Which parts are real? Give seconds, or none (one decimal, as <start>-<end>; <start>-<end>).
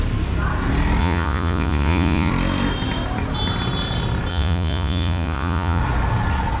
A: 0.0-1.0; 2.3-4.3; 5.8-6.6